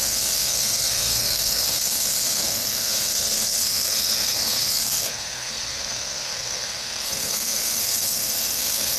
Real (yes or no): no